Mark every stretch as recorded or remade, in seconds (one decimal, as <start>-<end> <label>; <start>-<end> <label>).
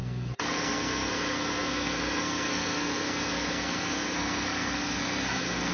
0.0-5.7 remade